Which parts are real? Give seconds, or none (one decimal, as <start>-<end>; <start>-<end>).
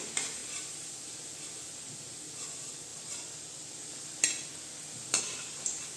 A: 0.0-6.0